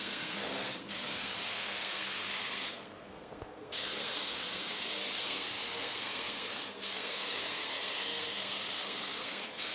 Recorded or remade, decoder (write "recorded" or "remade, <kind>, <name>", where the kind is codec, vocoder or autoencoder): remade, codec, SNAC